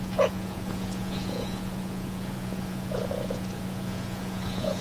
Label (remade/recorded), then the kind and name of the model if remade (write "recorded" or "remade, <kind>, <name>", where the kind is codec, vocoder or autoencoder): remade, vocoder, Vocos